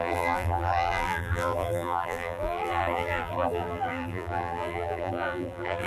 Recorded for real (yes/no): no